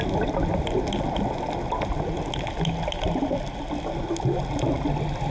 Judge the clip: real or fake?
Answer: real